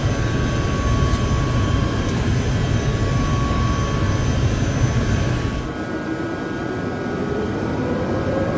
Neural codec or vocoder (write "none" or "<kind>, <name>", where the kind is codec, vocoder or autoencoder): none